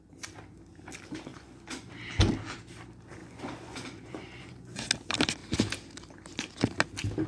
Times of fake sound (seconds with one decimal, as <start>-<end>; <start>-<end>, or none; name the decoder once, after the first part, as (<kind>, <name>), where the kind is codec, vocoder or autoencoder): 1.3-1.9 (vocoder, Vocos); 3.2-4.8